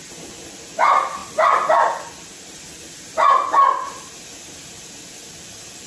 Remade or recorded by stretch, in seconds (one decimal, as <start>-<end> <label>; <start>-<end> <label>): 0.0-5.9 recorded